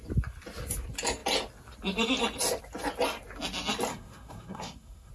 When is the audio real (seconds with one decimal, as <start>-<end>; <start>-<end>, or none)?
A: 0.0-3.9